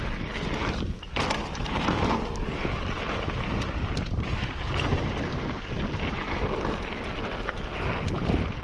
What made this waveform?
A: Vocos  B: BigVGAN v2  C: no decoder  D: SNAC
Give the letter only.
C